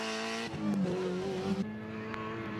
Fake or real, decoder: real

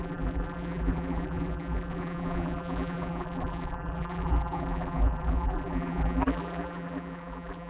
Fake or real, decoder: fake, vocoder, BigVGAN v2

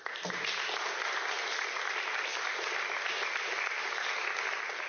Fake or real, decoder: real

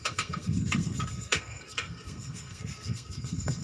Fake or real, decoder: fake, codec, SNAC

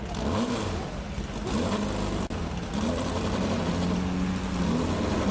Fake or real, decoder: real